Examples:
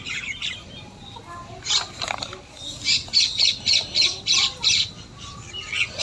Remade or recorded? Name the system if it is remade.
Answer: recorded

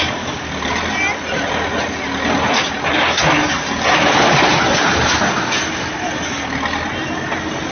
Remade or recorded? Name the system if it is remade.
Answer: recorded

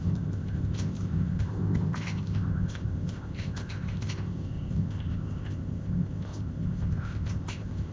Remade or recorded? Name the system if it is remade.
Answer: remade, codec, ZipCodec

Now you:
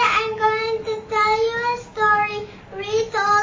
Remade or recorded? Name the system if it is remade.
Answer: remade, codec, DAC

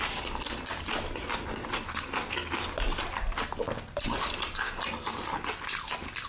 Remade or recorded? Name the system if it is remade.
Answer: recorded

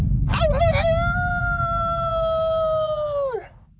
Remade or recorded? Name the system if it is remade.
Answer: recorded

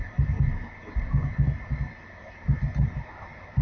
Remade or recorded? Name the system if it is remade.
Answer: recorded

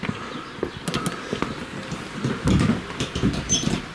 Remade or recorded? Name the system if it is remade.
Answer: recorded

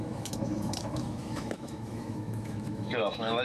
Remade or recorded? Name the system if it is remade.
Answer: remade, autoencoder, DAC-VAE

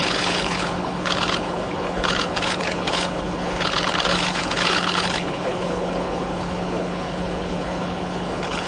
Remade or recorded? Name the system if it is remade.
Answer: remade, codec, HILCodec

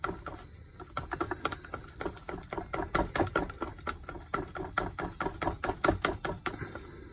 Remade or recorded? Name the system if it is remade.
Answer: recorded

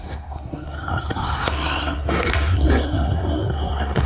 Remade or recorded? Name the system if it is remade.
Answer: remade, codec, SNAC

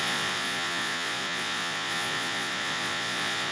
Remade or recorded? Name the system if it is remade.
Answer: remade, vocoder, Vocos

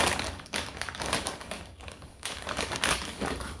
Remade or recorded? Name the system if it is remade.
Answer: remade, codec, DAC